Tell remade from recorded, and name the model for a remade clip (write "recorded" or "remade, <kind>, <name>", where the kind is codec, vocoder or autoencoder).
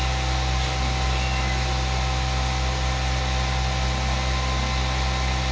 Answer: recorded